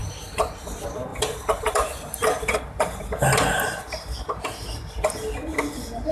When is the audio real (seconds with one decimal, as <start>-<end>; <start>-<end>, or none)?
0.7-1.1; 3.8-6.1